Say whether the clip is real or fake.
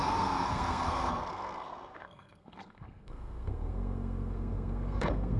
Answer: fake